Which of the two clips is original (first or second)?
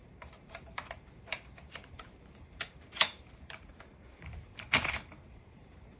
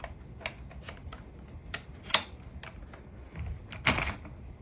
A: second